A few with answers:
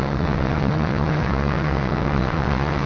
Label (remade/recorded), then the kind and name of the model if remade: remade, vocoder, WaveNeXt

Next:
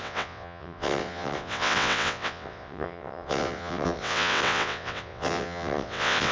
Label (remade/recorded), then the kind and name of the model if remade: remade, vocoder, WaveNeXt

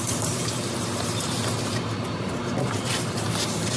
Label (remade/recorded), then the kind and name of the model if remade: recorded